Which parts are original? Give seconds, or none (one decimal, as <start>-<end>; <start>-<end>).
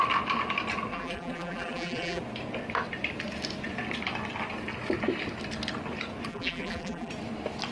0.0-0.9; 2.2-6.3; 7.1-7.7